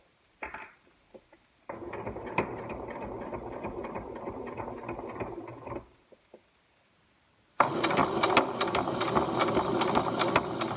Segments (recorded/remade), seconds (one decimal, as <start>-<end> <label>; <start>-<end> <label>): 0.0-8.0 remade; 8.0-10.8 recorded